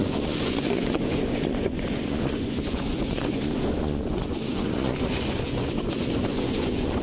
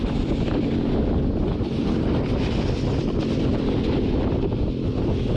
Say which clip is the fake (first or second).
first